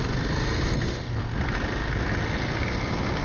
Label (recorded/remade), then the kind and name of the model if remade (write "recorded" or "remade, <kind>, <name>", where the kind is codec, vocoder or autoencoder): recorded